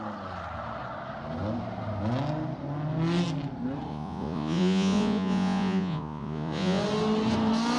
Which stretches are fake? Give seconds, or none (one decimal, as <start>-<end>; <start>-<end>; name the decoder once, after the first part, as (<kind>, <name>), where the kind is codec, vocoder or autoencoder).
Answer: 3.9-6.8 (vocoder, Vocos)